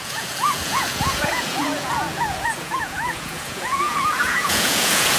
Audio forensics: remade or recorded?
remade